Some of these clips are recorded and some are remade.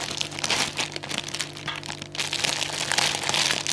recorded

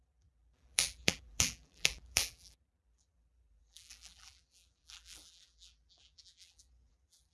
remade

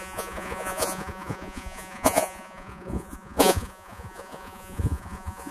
remade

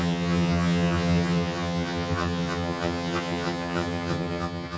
remade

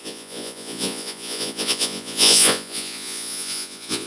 remade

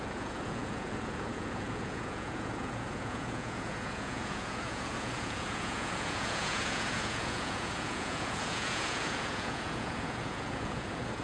remade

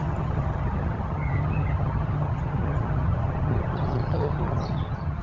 remade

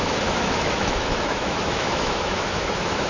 remade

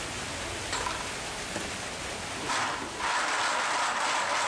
recorded